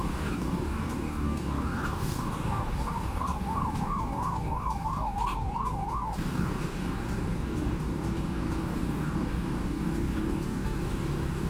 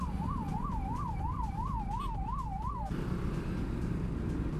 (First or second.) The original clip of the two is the second